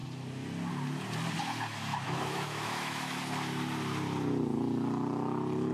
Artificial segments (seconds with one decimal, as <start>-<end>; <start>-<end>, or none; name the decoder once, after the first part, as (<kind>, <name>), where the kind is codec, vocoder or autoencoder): 1.9-3.2 (autoencoder, DAC-VAE)